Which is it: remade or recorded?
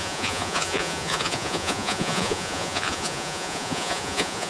remade